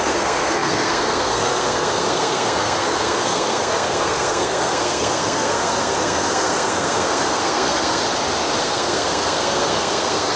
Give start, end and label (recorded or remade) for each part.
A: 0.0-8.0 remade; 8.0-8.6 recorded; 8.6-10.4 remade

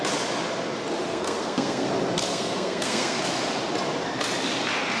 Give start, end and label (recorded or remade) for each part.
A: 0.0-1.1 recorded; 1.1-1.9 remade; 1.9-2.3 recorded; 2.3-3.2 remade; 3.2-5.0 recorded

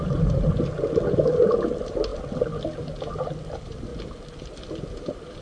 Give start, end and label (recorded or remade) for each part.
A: 0.0-5.4 recorded

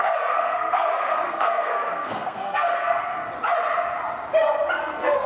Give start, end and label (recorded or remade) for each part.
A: 0.0-3.1 remade; 3.1-4.7 recorded; 4.7-5.3 remade

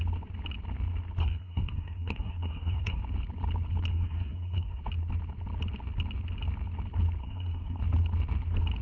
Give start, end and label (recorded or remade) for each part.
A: 0.0-1.2 recorded; 1.2-3.0 remade; 3.0-3.9 recorded; 3.9-4.8 remade; 4.8-7.2 recorded; 7.2-7.8 remade; 7.8-8.8 recorded

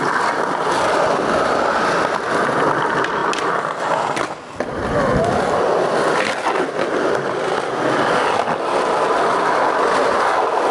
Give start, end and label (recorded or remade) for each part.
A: 0.0-10.7 recorded

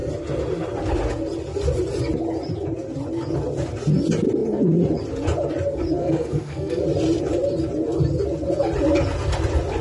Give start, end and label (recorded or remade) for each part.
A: 0.0-6.0 recorded; 6.0-6.8 remade; 6.8-9.8 recorded